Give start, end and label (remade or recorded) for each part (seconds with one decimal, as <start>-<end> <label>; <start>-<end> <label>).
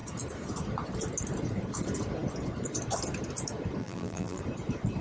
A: 0.0-3.8 recorded; 3.8-4.4 remade; 4.4-5.0 recorded